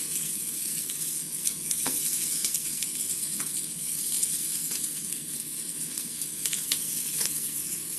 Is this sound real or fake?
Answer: fake